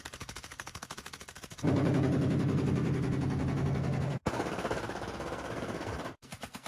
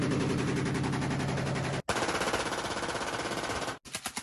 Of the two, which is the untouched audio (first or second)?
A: second